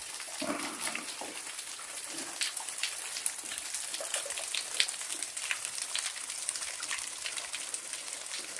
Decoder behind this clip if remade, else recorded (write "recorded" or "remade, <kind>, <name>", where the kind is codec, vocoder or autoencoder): remade, vocoder, BigVGAN v2